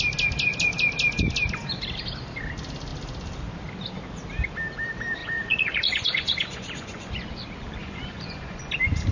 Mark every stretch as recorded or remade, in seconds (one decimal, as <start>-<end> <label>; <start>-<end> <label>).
0.0-5.2 recorded; 5.2-7.3 remade; 7.3-7.8 recorded; 7.8-8.7 remade; 8.7-9.1 recorded